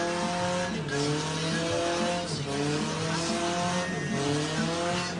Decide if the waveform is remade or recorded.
recorded